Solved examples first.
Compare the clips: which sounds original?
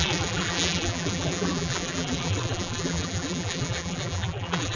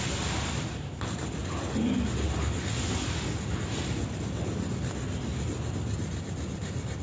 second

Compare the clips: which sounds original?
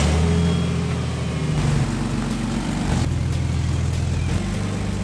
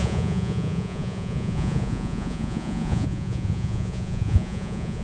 first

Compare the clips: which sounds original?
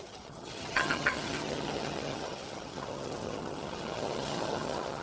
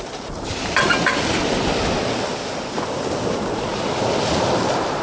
second